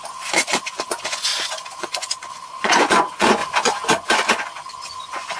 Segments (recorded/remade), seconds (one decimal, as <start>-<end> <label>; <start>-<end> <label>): 0.0-5.4 remade